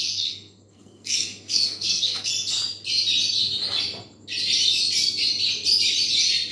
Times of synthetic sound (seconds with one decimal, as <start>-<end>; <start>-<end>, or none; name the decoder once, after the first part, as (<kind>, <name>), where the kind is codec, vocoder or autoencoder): 0.0-2.3 (codec, SNAC)

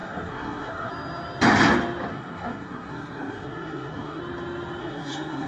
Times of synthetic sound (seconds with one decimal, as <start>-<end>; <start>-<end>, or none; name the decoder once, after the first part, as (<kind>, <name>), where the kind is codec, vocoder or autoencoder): 0.0-0.9 (codec, SNAC); 2.1-4.2; 4.8-5.5

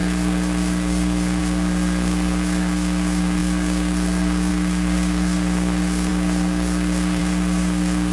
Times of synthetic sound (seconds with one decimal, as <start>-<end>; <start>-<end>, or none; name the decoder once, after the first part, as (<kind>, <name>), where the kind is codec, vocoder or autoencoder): 0.0-8.1 (codec, SNAC)

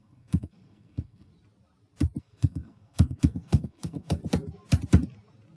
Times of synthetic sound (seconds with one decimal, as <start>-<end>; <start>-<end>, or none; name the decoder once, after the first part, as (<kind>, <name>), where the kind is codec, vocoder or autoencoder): 0.0-1.3 (codec, SNAC); 2.2-4.2

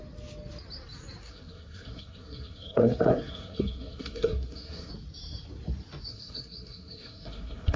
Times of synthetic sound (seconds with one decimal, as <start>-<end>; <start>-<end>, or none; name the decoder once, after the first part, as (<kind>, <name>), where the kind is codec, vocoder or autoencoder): 1.3-4.9 (codec, SNAC); 6.1-7.8

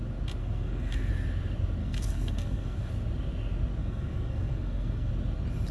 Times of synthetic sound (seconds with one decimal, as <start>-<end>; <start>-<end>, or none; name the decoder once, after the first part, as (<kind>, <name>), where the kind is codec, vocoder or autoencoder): 0.4-1.1 (codec, SNAC); 1.8-2.9; 3.8-5.1

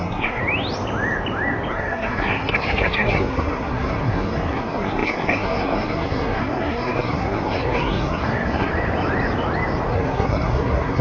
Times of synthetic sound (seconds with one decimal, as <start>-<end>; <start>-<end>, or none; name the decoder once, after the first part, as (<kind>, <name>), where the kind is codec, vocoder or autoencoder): 0.0-0.4 (codec, SNAC); 1.7-8.7; 9.9-11.0